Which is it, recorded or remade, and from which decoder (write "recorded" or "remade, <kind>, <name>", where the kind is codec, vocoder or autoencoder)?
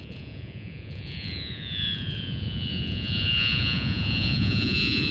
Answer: remade, vocoder, Vocos